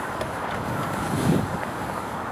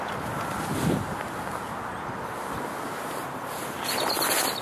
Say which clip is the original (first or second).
second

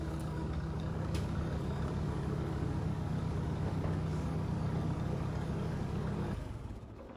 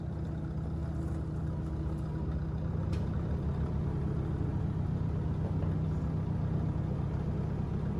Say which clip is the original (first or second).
second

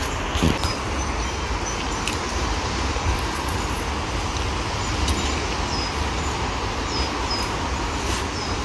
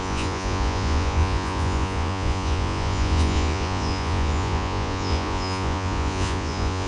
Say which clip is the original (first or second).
first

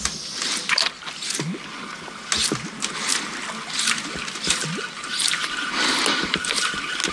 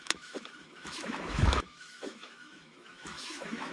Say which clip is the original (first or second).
first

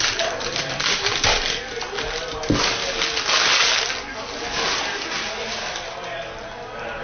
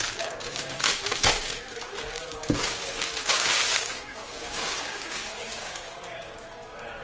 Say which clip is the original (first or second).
first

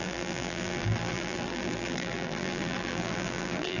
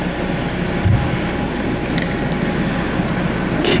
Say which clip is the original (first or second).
second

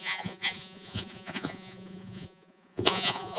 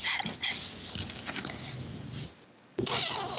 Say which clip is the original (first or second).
second